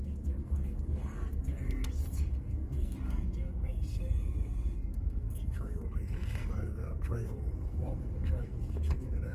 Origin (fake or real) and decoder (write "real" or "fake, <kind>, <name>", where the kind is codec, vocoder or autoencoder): fake, codec, SNAC